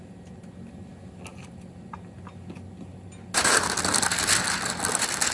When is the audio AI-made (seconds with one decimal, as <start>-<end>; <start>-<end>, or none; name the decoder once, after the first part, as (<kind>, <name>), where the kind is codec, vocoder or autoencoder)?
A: none